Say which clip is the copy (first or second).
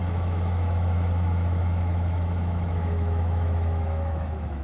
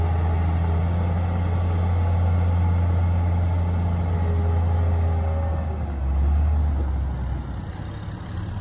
first